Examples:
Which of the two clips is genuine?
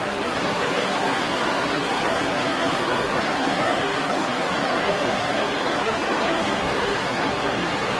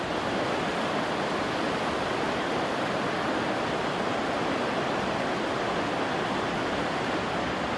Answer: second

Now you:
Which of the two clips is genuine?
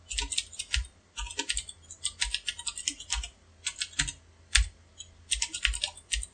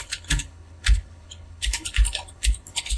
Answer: first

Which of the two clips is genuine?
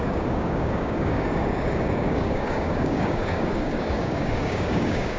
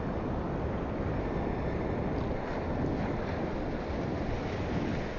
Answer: second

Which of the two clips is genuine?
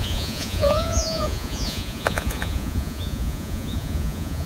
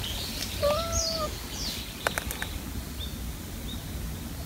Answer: second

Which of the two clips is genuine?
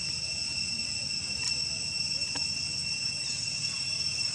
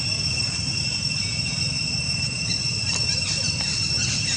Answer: first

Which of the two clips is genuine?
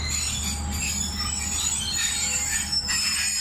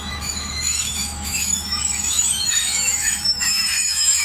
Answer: first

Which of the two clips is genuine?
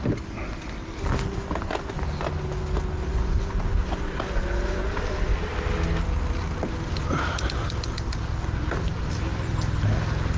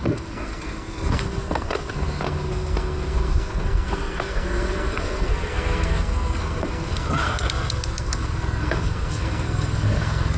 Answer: first